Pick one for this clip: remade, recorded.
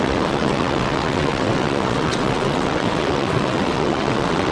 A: remade